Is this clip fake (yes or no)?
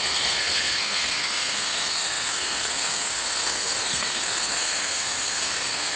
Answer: yes